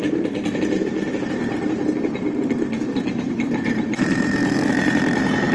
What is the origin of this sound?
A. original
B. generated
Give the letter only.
B